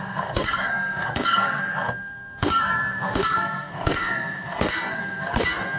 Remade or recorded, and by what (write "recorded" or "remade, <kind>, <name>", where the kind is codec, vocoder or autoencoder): remade, codec, SNAC